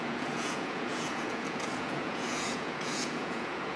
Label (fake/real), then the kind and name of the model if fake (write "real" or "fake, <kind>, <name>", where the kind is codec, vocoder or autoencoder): fake, vocoder, Vocos